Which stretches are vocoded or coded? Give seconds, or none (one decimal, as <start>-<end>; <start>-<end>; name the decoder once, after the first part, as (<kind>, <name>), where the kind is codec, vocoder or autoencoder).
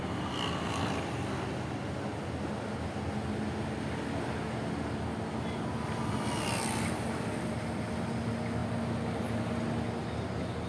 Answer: none